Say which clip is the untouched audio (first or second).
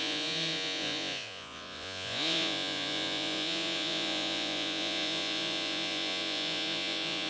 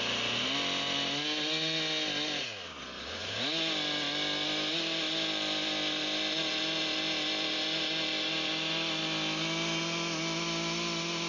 second